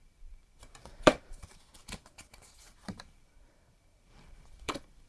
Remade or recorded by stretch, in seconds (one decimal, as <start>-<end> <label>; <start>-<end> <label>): 0.0-5.1 remade